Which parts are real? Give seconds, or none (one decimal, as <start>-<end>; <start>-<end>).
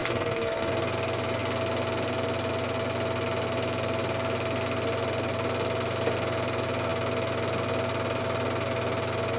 0.7-9.4